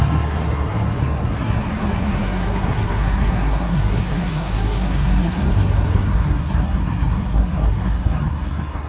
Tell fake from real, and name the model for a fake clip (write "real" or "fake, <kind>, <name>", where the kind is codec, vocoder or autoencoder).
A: fake, codec, SNAC